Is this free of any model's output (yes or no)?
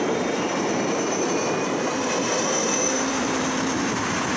no